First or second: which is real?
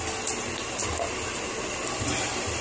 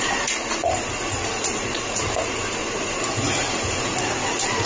first